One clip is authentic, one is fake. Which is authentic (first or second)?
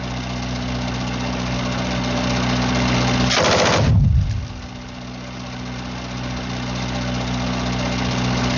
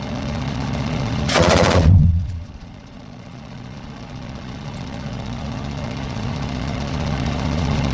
first